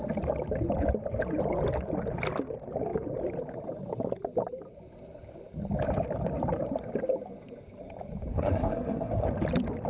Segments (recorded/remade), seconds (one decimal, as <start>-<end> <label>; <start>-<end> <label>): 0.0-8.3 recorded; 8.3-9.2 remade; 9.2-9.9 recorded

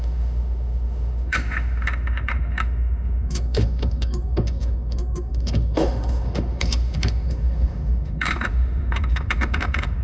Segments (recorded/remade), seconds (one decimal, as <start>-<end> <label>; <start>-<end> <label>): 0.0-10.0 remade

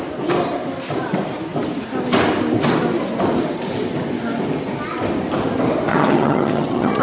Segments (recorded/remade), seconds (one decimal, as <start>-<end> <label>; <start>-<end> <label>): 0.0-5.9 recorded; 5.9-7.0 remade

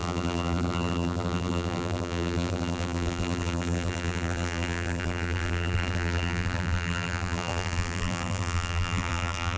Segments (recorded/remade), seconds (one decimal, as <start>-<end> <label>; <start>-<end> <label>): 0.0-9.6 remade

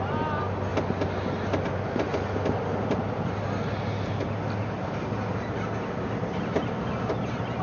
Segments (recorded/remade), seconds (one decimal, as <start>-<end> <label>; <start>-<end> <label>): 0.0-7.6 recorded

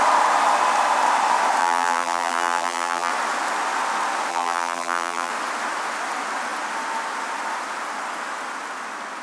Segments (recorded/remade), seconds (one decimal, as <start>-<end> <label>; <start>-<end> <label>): 0.0-1.6 recorded; 1.6-3.1 remade; 3.1-4.3 recorded; 4.3-5.3 remade; 5.3-9.2 recorded